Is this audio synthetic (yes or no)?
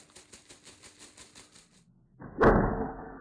no